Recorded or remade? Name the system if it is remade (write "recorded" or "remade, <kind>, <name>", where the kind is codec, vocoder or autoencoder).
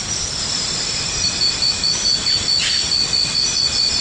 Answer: recorded